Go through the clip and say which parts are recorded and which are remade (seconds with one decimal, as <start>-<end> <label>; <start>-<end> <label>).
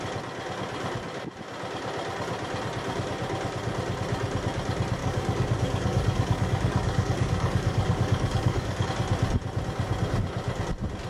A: 0.0-5.0 recorded; 5.0-8.9 remade; 8.9-11.1 recorded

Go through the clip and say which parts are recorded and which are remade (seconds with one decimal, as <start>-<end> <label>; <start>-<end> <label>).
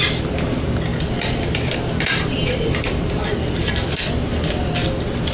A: 0.0-0.9 recorded; 0.9-4.1 remade; 4.1-5.3 recorded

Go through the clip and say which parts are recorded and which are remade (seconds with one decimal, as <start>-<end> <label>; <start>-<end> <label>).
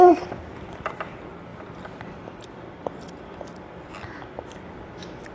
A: 0.0-1.5 recorded; 1.5-4.7 remade; 4.7-5.3 recorded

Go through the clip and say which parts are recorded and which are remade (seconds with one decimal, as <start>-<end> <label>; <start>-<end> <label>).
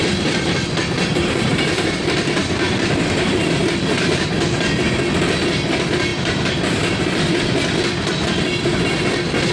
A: 0.0-3.6 remade; 3.6-6.1 recorded; 6.1-8.8 remade; 8.8-9.5 recorded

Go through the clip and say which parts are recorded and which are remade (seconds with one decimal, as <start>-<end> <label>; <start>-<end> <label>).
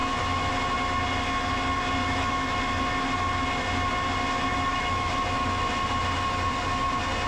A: 0.0-0.5 remade; 0.5-2.0 recorded; 2.0-2.6 remade; 2.6-4.5 recorded; 4.5-5.1 remade; 5.1-7.3 recorded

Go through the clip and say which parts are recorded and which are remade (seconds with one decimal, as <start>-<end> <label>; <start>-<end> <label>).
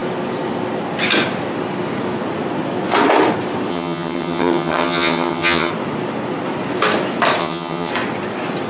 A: 0.0-3.7 recorded; 3.7-5.7 remade; 5.7-7.4 recorded; 7.4-7.9 remade; 7.9-8.7 recorded